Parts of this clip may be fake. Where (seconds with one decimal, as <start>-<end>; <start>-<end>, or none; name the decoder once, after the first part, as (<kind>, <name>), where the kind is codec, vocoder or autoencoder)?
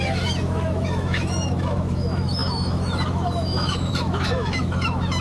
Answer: 0.0-5.2 (autoencoder, DAC-VAE)